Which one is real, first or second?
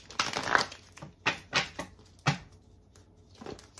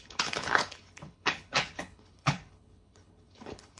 first